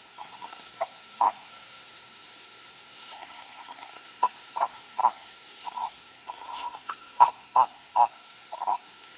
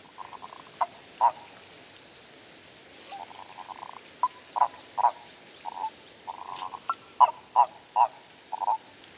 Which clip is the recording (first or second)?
second